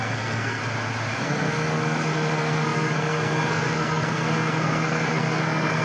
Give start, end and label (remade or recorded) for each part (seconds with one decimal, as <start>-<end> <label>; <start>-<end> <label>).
0.0-0.6 remade; 0.6-1.2 recorded; 1.2-5.8 remade